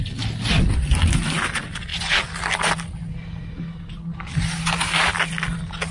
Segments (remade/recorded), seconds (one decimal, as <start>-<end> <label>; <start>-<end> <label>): 0.0-5.9 recorded